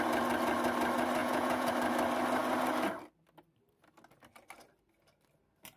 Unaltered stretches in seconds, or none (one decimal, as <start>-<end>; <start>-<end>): 0.0-1.2; 1.7-5.8